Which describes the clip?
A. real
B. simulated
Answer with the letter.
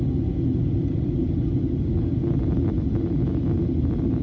A